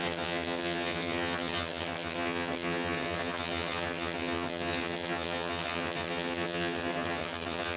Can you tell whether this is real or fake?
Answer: fake